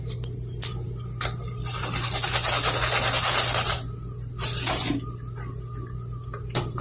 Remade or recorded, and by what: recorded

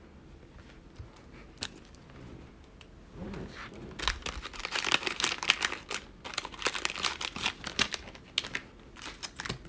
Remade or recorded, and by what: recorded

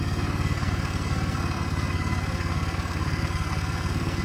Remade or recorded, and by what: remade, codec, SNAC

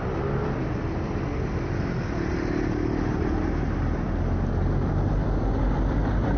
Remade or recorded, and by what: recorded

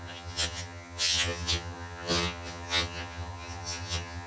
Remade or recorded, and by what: remade, vocoder, HiFi-GAN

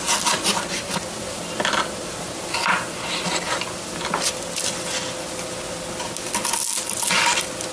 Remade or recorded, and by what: recorded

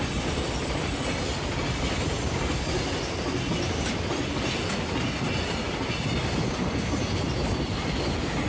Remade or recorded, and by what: recorded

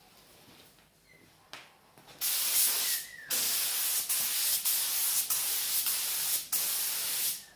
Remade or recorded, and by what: recorded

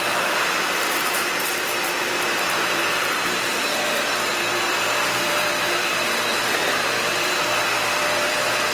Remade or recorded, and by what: remade, vocoder, BigVGAN v2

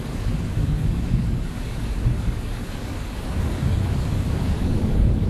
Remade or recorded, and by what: remade, codec, DAC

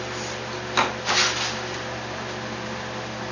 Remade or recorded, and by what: recorded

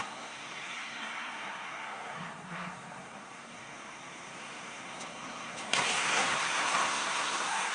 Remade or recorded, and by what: remade, codec, SNAC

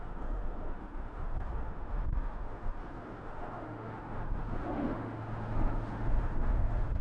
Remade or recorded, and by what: remade, autoencoder, DAC-VAE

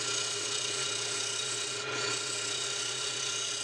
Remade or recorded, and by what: remade, vocoder, WaveNeXt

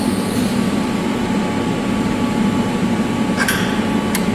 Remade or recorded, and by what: remade, vocoder, BigVGAN v2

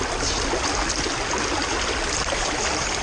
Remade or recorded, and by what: recorded